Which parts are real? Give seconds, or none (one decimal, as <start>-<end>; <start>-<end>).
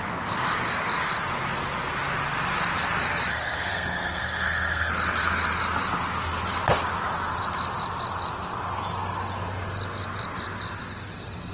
0.0-3.3; 4.9-11.5